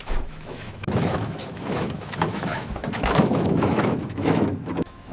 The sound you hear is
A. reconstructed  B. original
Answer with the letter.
A